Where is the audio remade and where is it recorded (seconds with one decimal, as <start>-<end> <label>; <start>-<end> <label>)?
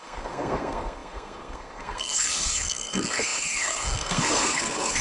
0.0-5.0 remade